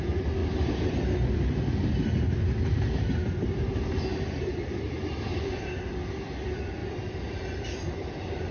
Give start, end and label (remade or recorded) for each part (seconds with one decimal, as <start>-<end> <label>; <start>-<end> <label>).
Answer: 0.0-4.1 recorded; 4.1-5.7 remade; 5.7-6.8 recorded; 6.8-8.5 remade